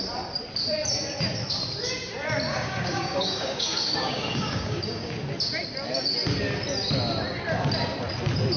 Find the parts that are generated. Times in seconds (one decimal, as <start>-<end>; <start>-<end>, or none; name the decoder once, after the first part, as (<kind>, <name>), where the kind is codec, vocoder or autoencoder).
2.5-5.1 (codec, DAC)